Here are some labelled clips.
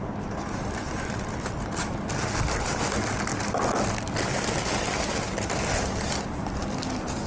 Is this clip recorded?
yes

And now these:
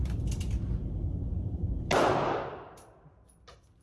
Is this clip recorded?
yes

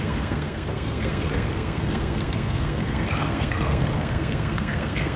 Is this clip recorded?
no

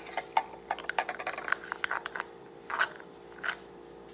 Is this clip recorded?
yes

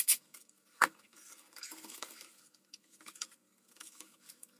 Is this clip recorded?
no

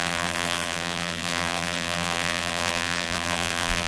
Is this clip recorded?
no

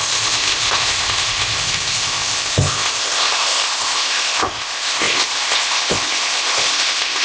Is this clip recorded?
no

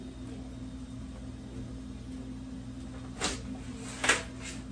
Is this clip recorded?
yes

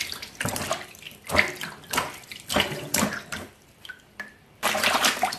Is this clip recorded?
no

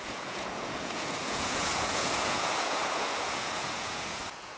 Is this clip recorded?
no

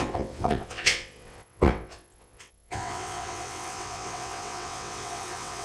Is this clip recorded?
no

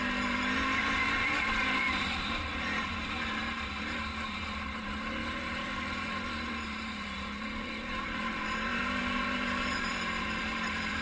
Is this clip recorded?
no